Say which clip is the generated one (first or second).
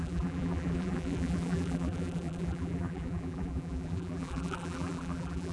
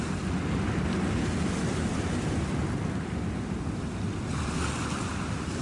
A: first